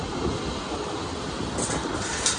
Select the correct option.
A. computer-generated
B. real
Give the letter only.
B